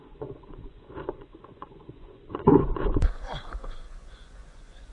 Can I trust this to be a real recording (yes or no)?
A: no